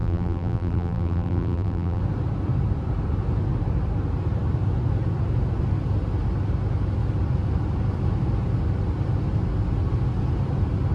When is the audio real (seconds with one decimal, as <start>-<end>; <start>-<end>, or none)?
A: 2.0-10.9